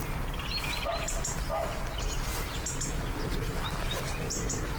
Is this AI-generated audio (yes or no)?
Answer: no